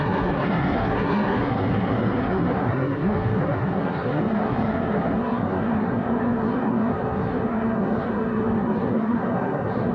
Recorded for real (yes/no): no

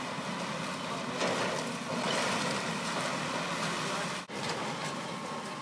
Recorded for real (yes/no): yes